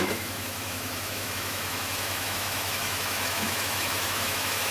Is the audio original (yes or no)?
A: no